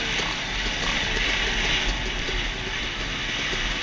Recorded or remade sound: recorded